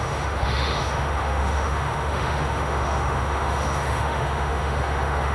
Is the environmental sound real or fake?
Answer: fake